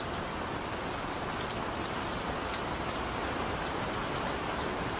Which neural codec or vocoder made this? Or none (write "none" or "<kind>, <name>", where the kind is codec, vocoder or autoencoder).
none